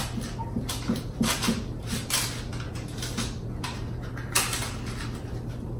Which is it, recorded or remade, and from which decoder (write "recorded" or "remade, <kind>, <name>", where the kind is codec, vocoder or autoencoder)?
recorded